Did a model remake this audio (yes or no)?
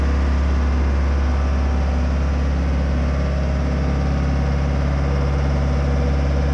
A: no